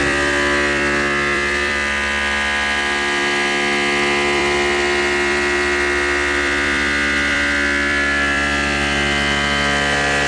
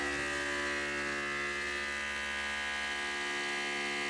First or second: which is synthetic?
first